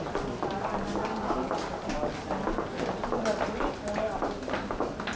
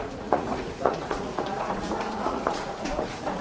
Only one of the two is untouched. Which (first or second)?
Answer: first